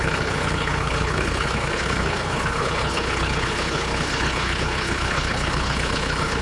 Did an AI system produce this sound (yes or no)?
yes